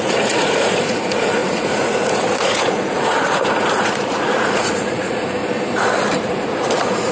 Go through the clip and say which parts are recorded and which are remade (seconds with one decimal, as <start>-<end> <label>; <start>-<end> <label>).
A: 0.0-5.4 remade; 5.4-6.2 recorded; 6.2-7.1 remade